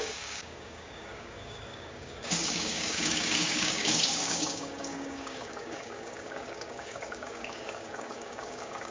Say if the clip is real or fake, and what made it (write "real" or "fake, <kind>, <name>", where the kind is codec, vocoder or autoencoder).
fake, codec, DAC